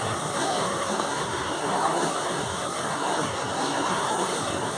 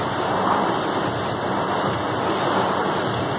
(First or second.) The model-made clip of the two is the first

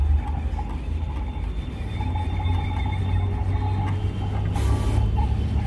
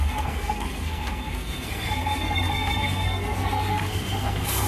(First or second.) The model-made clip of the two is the second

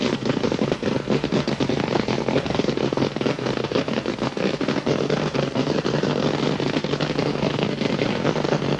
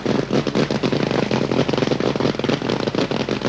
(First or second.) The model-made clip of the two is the first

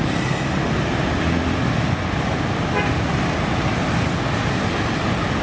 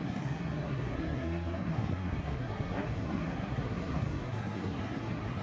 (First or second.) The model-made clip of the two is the second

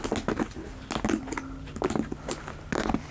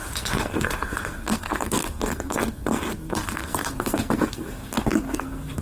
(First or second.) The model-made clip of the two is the second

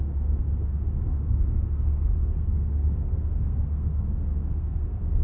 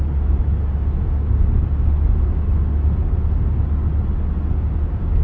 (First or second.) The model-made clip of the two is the first